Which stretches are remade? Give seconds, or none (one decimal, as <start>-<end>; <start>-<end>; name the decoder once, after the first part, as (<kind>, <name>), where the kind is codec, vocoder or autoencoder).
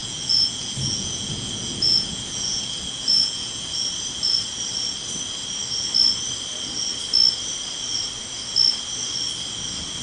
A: 0.0-3.6 (vocoder, Vocos)